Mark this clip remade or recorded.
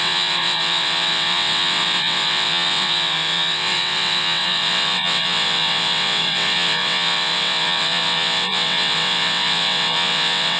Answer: remade